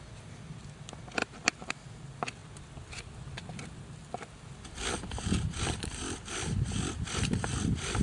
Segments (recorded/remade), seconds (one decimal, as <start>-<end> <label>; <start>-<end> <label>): 0.0-8.0 recorded